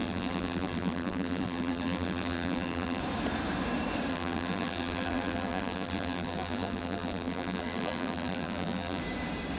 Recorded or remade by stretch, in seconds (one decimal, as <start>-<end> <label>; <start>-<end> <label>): 0.0-3.0 remade; 3.0-4.1 recorded; 4.1-9.0 remade; 9.0-9.6 recorded